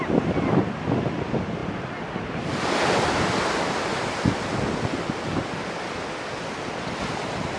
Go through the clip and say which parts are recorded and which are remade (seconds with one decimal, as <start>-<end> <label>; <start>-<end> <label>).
0.0-7.6 recorded